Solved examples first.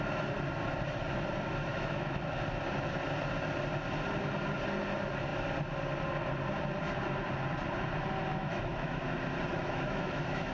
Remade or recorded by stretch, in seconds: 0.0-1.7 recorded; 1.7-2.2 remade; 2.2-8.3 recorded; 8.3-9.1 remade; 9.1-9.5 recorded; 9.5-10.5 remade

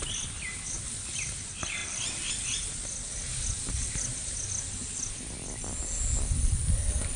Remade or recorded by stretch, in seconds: 0.0-7.2 recorded